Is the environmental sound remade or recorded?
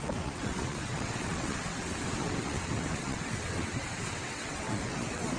remade